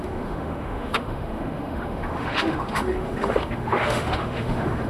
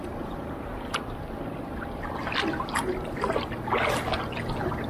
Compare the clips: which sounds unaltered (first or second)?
second